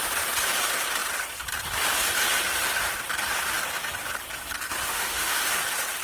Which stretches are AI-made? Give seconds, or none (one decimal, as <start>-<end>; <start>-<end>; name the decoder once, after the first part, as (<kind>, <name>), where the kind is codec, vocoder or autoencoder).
4.9-5.4 (autoencoder, DAC-VAE)